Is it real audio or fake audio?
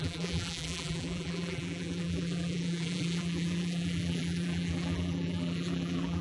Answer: fake